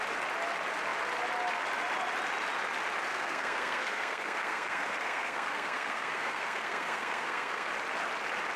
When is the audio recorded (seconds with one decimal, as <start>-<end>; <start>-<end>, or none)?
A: 0.0-3.1; 7.7-8.6